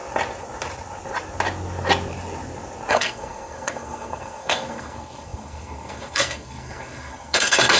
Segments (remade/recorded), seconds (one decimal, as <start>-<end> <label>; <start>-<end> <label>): 0.0-2.9 recorded; 2.9-7.8 remade